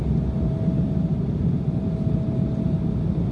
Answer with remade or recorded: recorded